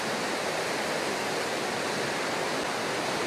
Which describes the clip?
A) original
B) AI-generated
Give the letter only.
A